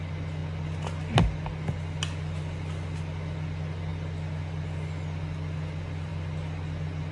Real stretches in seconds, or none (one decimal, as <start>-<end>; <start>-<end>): 0.0-7.1